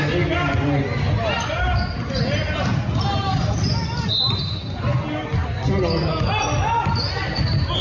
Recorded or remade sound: recorded